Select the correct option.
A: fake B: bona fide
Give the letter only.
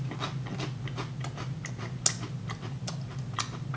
B